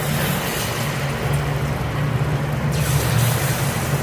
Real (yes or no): yes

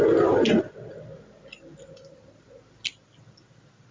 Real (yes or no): yes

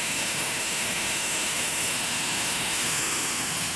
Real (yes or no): no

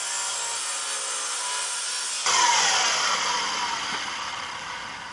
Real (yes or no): yes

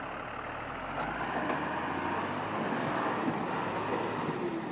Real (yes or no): yes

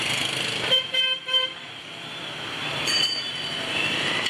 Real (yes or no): no